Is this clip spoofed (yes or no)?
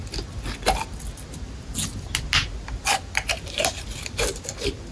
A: no